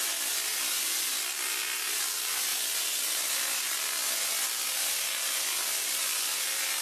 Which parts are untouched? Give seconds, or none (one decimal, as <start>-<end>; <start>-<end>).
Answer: 0.0-6.8